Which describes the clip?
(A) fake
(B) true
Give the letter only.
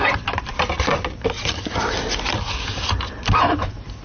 B